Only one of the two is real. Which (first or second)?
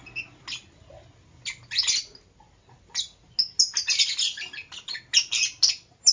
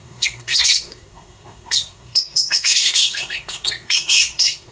first